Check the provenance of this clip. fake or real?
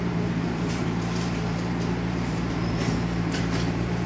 fake